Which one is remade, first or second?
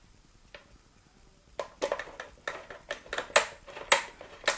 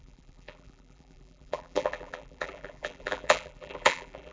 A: second